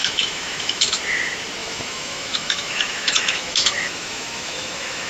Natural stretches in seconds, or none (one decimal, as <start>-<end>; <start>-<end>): 1.0-1.6